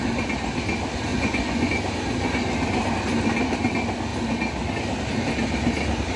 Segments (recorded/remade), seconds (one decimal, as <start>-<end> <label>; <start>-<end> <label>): 0.0-1.1 recorded; 1.1-1.7 remade; 1.7-6.2 recorded